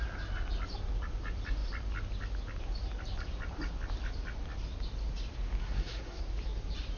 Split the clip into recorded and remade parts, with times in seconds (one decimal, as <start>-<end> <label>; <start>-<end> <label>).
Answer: 0.0-5.6 recorded; 5.6-6.2 remade; 6.2-7.0 recorded